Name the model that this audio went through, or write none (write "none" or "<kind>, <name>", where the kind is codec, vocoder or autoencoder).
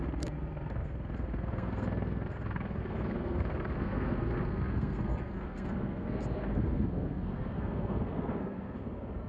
codec, SNAC